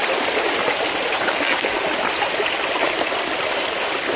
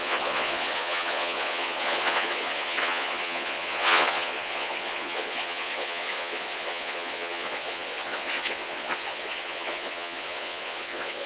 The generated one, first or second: second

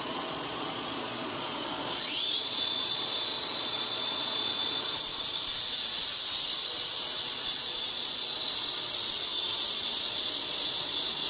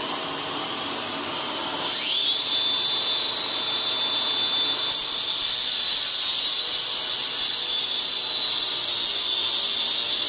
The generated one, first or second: first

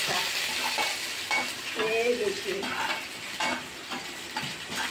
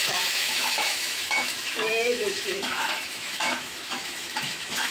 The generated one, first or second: second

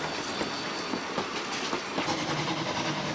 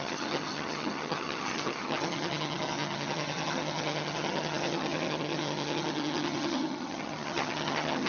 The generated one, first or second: second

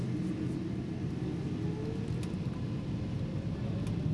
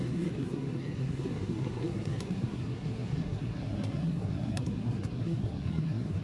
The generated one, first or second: second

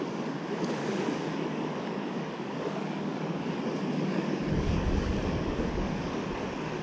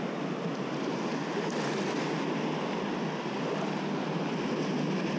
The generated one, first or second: first